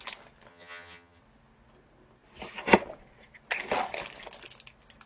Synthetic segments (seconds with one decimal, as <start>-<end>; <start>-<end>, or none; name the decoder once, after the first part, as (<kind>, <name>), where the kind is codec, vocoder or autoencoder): 0.5-1.2 (vocoder, HiFi-GAN)